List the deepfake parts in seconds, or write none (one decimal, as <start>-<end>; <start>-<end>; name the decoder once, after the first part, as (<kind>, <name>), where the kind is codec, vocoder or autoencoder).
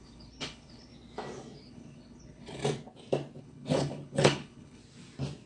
0.0-0.9 (codec, HILCodec); 1.7-2.6; 3.4-4.8